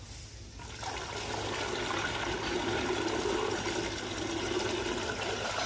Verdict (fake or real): real